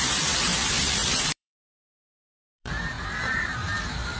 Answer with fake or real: fake